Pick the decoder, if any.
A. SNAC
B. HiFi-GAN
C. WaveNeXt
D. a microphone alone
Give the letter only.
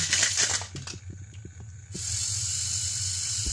D